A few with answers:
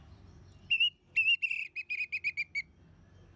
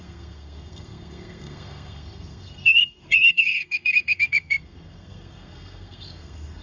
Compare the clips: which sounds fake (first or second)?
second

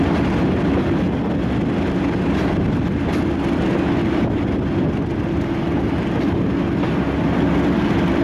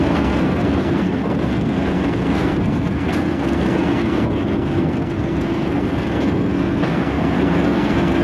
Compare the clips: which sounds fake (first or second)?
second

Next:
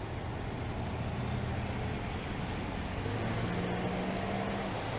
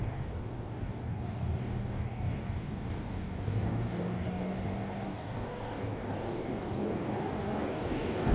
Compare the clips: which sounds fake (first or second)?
second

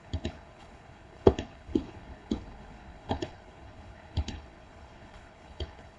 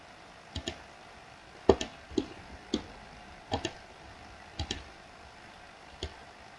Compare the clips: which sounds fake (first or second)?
first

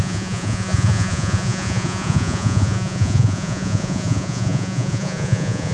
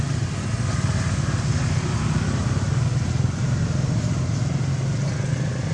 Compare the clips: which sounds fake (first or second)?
first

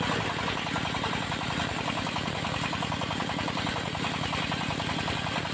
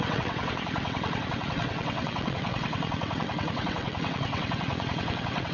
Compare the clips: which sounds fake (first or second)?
second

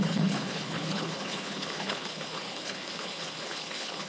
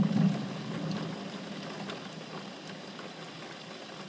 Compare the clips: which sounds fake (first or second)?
first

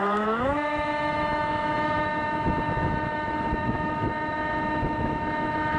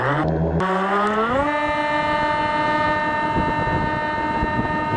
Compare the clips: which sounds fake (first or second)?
first